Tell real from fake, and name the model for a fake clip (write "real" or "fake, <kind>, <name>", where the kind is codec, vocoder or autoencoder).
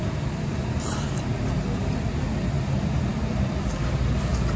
real